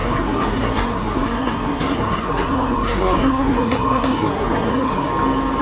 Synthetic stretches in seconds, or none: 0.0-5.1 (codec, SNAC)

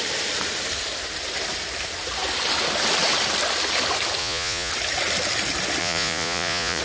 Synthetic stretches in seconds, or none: 4.2-4.7 (vocoder, Vocos); 5.8-6.8

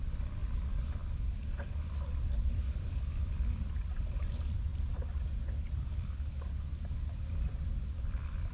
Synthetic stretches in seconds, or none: 0.0-4.7 (vocoder, BigVGAN v2); 6.7-8.5